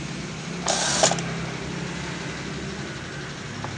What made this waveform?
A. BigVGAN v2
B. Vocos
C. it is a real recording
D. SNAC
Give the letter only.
C